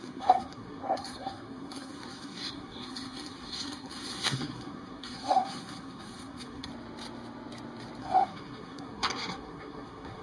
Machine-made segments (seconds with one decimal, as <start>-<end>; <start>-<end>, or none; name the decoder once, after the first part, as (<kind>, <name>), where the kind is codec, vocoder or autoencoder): 0.0-6.7 (codec, SNAC); 8.0-10.2